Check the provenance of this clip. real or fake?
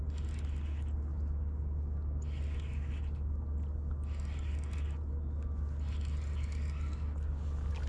real